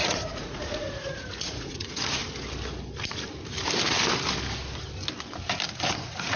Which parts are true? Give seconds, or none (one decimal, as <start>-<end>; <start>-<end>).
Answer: 2.2-6.0

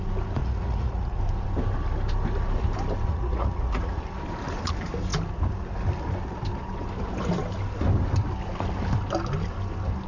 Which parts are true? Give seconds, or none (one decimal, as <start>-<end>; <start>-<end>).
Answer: 0.0-0.4; 1.2-3.1; 4.0-10.1

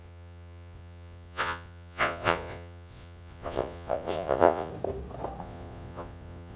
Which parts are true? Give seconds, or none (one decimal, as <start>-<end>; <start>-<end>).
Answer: 4.7-5.4

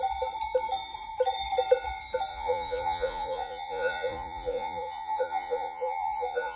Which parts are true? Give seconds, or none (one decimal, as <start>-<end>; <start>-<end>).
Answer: 0.0-2.3